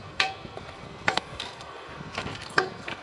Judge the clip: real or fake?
fake